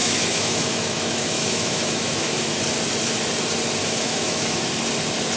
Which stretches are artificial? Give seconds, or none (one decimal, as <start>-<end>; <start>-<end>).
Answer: 0.0-2.6; 3.8-4.6